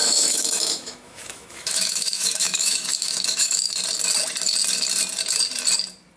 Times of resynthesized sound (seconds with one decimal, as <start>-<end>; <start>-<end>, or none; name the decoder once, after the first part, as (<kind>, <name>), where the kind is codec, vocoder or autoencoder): 0.0-3.7 (autoencoder, DAC-VAE)